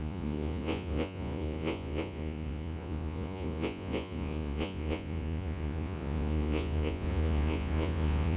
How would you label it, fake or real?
fake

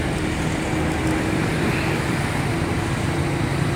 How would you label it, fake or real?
real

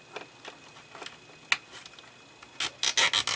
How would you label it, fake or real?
real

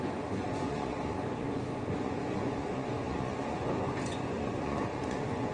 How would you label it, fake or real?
fake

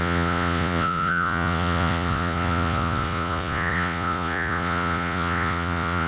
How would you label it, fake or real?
fake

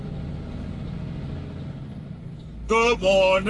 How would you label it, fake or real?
real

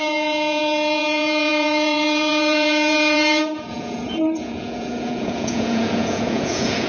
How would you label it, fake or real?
fake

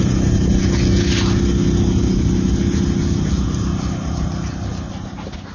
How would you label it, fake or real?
real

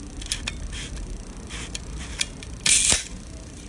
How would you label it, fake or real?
real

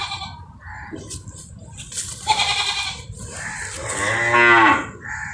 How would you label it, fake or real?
real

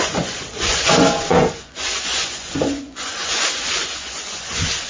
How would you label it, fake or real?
fake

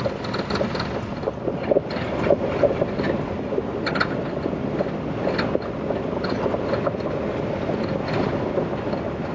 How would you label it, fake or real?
real